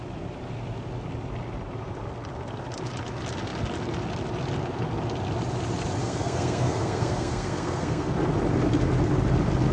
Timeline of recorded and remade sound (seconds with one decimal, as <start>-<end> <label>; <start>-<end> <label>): 0.0-6.0 recorded; 6.0-8.1 remade; 8.1-9.7 recorded